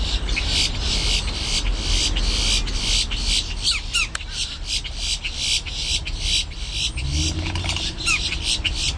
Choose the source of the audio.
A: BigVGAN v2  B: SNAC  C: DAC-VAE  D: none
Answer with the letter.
D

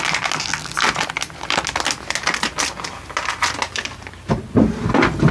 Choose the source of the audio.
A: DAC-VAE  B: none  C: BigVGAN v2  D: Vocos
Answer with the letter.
B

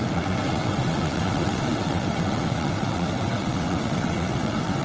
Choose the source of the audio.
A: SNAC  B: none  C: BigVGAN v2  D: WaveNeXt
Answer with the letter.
D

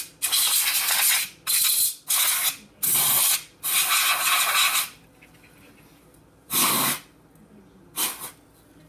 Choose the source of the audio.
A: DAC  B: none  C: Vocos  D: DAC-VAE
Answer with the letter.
B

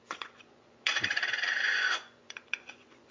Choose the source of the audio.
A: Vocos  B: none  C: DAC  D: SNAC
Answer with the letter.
A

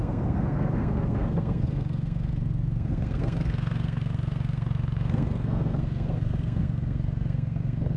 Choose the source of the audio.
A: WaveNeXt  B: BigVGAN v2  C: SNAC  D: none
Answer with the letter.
C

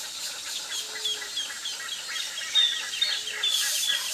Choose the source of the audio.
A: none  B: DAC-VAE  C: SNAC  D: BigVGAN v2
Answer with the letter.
A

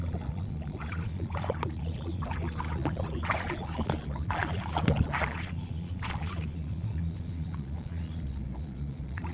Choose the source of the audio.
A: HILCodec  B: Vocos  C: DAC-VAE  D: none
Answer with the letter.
B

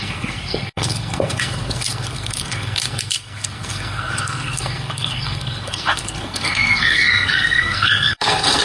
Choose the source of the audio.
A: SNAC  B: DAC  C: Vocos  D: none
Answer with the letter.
A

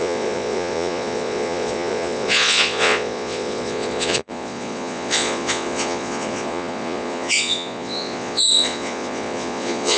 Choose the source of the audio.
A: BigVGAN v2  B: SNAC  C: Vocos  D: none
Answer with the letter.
C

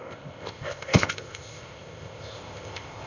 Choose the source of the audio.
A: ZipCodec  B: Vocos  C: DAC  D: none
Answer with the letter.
A